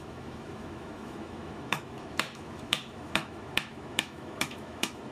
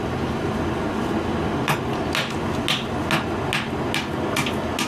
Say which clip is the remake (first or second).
first